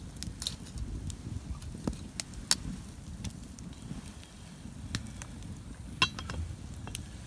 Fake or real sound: real